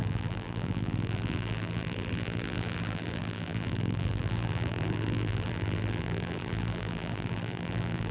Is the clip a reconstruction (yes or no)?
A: yes